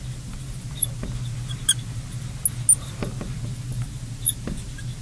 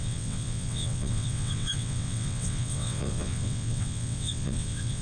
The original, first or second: first